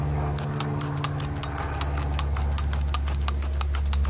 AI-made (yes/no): no